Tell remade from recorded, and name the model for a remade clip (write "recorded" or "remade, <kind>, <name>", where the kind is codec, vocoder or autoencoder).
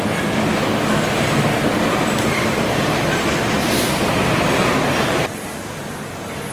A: recorded